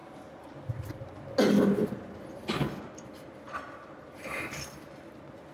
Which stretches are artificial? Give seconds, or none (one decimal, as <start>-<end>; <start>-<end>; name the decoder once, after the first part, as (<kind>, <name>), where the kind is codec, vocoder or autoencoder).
1.8-4.4 (vocoder, BigVGAN v2)